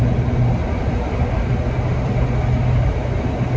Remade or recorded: recorded